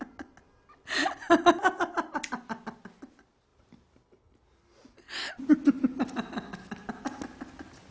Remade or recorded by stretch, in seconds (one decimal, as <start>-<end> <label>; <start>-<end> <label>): 0.0-7.9 recorded